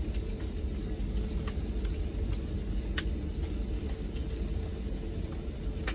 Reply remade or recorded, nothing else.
recorded